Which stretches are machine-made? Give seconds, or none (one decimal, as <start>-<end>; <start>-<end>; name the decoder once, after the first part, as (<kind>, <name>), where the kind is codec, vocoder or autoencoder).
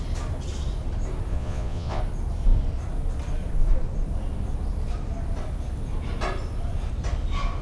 1.3-2.0 (vocoder, Vocos)